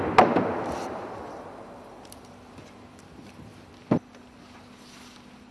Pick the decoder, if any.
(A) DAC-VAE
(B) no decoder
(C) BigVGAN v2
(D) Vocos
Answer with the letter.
B